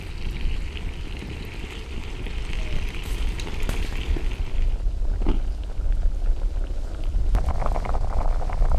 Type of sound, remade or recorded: recorded